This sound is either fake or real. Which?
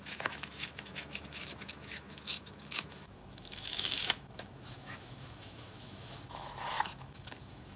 fake